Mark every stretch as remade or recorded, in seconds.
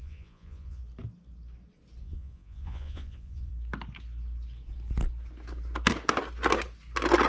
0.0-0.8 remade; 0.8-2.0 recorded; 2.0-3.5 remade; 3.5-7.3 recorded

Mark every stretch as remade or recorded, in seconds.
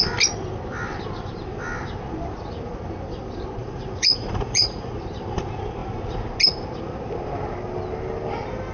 0.0-3.6 recorded; 3.6-5.0 remade; 5.0-8.7 recorded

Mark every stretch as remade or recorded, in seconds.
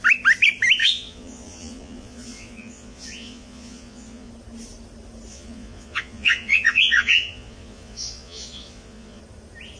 0.0-0.8 recorded; 0.8-4.3 remade; 4.3-5.3 recorded; 5.3-9.2 remade; 9.2-9.8 recorded